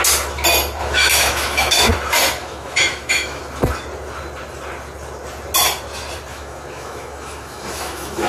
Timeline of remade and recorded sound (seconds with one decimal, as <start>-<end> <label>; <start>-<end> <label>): 0.0-0.8 recorded; 0.8-1.9 remade; 1.9-2.4 recorded; 2.4-3.4 remade; 3.4-6.3 recorded; 6.3-8.3 remade